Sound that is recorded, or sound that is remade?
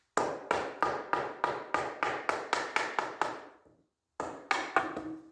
recorded